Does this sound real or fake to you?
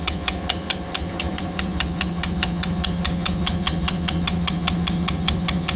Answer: fake